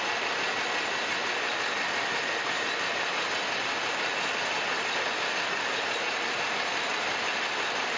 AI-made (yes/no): no